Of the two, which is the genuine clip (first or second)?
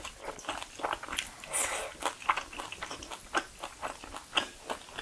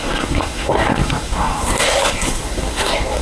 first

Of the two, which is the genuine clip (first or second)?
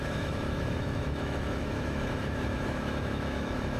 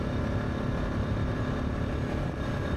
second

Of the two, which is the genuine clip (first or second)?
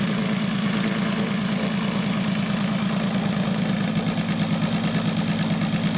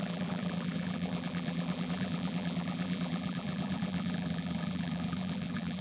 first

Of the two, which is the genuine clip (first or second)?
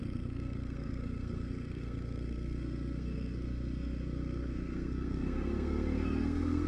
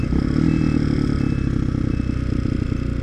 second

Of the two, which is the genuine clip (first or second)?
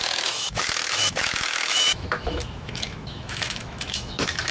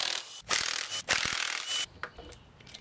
second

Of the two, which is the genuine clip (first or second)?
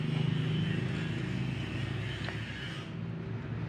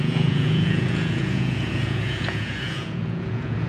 first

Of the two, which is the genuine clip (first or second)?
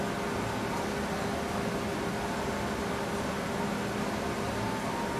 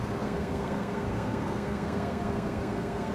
first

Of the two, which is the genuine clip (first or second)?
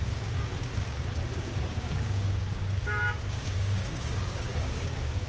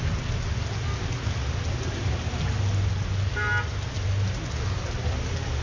second